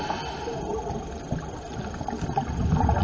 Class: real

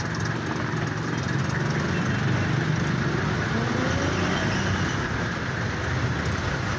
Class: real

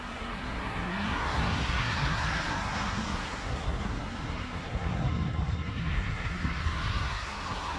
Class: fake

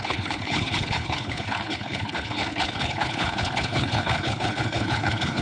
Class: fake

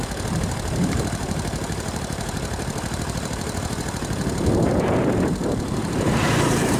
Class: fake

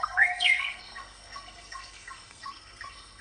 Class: fake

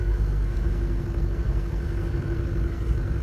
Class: fake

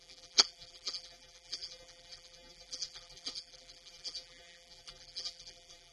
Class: fake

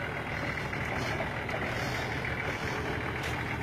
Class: real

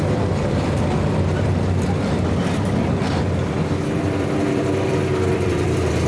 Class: fake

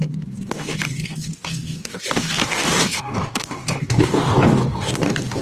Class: fake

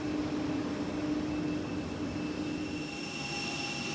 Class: real